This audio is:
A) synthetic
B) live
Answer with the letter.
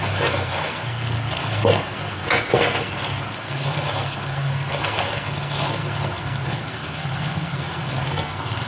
A